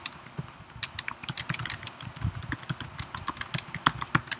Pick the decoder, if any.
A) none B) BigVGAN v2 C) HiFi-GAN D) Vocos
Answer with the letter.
A